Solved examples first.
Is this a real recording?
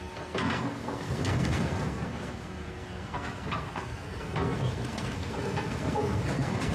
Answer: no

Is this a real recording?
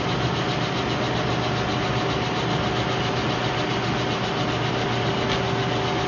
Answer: yes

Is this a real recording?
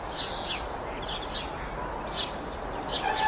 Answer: yes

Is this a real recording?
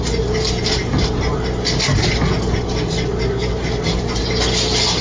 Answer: yes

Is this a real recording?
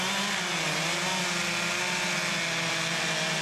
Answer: yes